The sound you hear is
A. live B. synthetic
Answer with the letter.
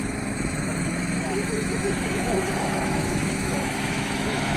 B